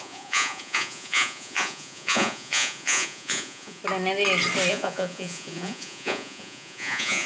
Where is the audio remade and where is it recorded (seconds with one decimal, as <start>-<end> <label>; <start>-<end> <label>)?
0.0-3.8 remade; 3.8-4.7 recorded; 4.7-7.3 remade